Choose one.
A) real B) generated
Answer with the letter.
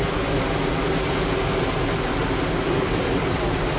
A